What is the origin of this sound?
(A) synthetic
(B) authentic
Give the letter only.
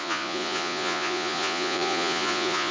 A